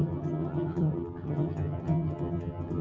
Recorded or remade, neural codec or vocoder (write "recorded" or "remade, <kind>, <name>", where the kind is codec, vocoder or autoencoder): remade, vocoder, HiFi-GAN